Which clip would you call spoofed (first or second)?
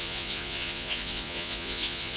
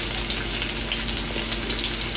first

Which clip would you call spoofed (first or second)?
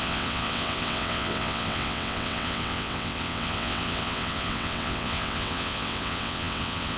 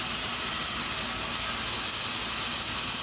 first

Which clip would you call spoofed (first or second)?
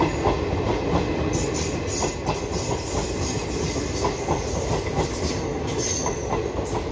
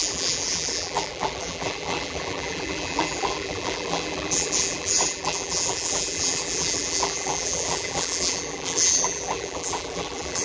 second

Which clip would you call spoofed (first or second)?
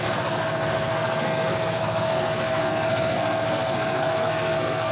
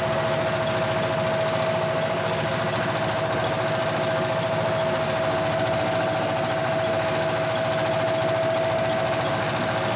first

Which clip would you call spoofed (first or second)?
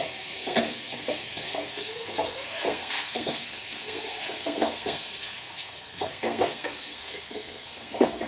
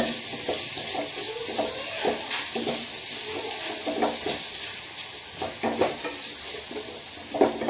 first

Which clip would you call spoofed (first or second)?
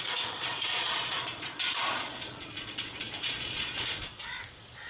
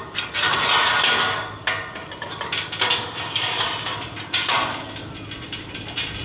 first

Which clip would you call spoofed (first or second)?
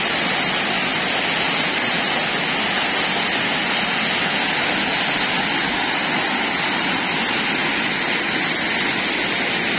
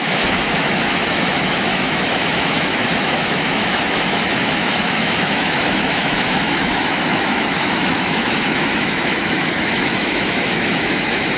second